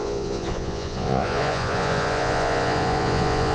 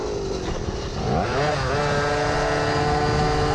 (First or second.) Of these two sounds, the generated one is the first